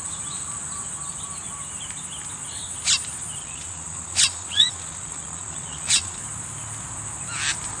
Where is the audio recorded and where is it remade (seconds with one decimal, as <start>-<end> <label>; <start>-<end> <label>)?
0.0-3.4 recorded; 3.4-6.2 remade; 6.2-7.8 recorded